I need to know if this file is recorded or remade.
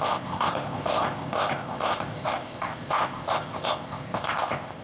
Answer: remade